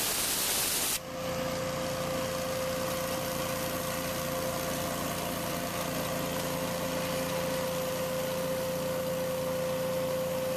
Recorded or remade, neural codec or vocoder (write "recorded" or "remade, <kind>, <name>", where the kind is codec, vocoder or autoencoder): recorded